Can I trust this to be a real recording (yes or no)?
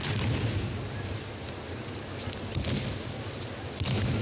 yes